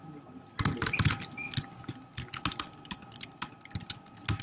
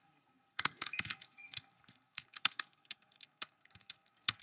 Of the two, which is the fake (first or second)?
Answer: second